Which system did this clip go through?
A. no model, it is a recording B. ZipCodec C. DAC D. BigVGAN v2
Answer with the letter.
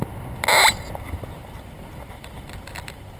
D